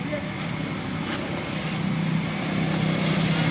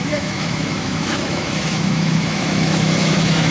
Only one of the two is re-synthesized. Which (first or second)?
second